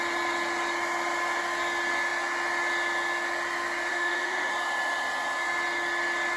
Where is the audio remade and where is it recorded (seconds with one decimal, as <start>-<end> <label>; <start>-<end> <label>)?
0.0-3.9 recorded; 3.9-4.5 remade; 4.5-6.4 recorded